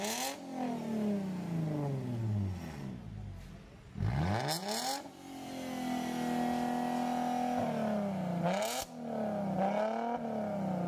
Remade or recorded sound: recorded